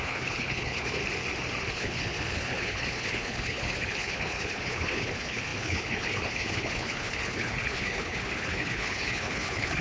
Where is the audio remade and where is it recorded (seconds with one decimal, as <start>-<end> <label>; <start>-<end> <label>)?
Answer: 0.0-1.0 remade; 1.0-1.7 recorded; 1.7-9.8 remade